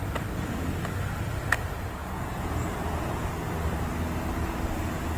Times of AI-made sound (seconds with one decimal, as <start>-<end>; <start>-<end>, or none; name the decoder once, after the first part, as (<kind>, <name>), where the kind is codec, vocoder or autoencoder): 2.0-3.3 (vocoder, Vocos)